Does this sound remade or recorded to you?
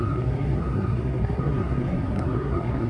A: remade